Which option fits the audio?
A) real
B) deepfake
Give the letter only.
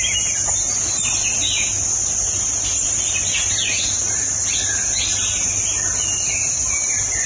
A